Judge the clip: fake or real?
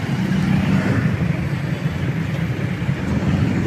real